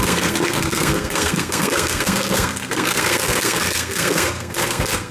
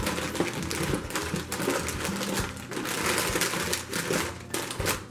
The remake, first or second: first